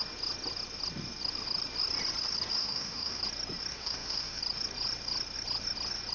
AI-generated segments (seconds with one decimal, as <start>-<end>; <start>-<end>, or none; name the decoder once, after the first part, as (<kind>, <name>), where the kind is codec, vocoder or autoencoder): 2.6-3.2 (autoencoder, DAC-VAE); 3.7-4.4